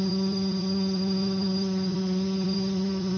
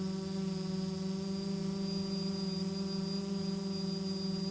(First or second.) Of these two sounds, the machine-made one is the first